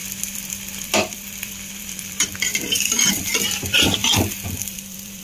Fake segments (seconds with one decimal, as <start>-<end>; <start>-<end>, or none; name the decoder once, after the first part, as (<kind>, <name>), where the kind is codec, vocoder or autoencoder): 0.0-4.0 (vocoder, BigVGAN v2); 4.6-5.2